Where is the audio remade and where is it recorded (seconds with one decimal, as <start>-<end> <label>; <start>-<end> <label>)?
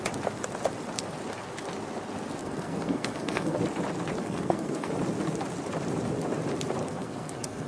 0.0-2.4 recorded; 2.4-3.6 remade; 3.6-4.2 recorded; 4.2-4.9 remade; 4.9-6.8 recorded; 6.8-7.7 remade